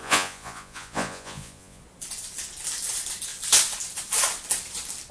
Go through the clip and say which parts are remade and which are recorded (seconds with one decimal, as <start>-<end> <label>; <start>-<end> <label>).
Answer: 0.0-1.8 remade; 1.8-5.1 recorded